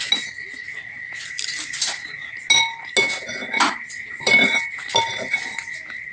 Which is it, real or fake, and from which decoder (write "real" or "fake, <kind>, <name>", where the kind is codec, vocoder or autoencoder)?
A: real